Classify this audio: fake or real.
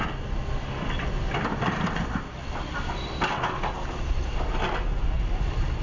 real